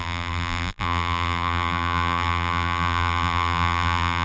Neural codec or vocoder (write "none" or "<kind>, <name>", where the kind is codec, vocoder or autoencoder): vocoder, BigVGAN v2